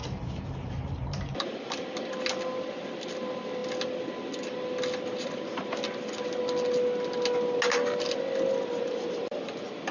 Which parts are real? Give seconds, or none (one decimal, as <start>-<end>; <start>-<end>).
2.1-8.8; 9.4-9.9